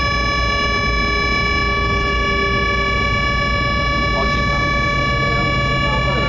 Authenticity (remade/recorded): recorded